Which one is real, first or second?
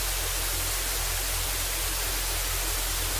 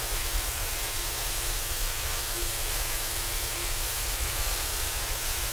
first